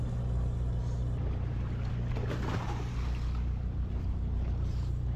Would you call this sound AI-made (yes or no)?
no